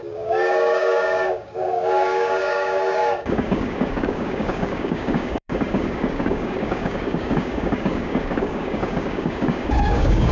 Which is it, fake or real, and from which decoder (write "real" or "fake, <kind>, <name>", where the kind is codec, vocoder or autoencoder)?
fake, codec, DAC